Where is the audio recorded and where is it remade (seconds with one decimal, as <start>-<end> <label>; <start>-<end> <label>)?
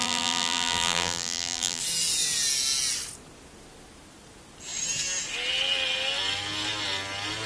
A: 0.0-1.8 remade; 1.8-7.5 recorded